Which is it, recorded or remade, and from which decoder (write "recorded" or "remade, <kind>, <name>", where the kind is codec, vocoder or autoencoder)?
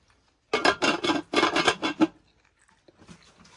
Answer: recorded